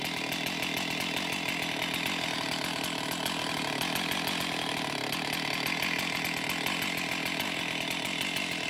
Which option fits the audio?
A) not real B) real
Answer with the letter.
B